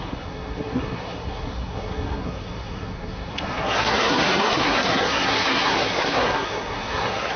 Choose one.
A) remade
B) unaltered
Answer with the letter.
A